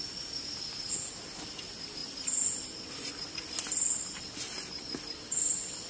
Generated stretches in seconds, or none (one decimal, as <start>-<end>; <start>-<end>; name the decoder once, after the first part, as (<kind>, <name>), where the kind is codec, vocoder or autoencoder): none